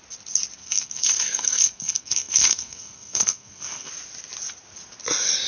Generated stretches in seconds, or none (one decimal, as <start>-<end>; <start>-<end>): 0.6-3.9